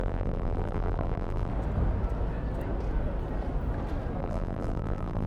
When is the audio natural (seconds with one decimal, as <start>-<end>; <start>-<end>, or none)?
1.5-4.2